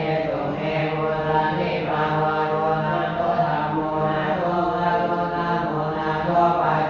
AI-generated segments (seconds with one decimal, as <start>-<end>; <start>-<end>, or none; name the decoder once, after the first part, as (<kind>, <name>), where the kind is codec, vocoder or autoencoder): 0.8-3.2 (codec, DAC); 3.8-4.9